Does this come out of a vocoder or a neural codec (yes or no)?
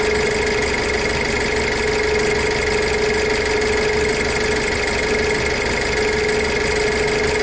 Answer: no